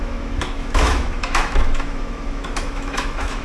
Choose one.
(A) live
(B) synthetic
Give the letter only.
B